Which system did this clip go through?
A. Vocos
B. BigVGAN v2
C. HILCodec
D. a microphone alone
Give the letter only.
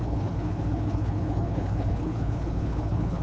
C